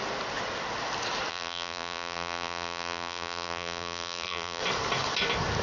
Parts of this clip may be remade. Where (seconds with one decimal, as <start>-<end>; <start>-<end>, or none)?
1.3-4.6